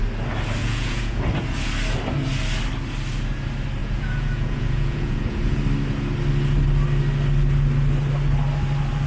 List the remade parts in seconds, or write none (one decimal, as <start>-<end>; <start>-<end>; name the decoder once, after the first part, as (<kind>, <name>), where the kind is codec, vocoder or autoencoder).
0.6-1.2 (vocoder, Vocos); 3.8-5.6